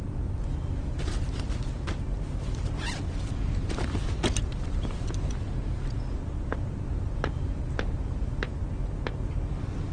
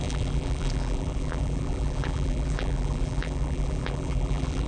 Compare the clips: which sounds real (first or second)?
first